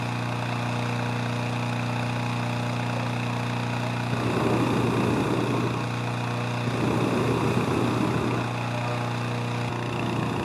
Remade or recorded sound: recorded